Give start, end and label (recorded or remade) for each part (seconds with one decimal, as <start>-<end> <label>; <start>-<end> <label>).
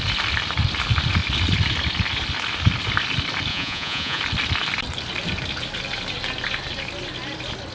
0.0-3.5 recorded; 3.5-4.2 remade; 4.2-7.7 recorded